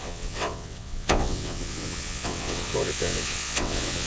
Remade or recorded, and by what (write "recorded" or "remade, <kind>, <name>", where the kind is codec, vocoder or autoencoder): remade, vocoder, WaveNeXt